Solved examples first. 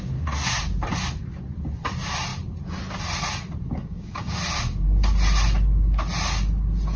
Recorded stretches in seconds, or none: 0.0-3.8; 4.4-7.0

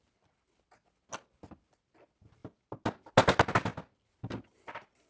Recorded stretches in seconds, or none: 0.0-5.1